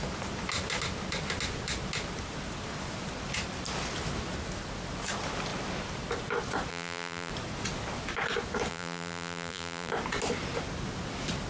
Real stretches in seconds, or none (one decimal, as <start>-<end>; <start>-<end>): 0.0-6.7; 7.3-8.7; 9.9-11.5